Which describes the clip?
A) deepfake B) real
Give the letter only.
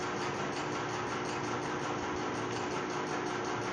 B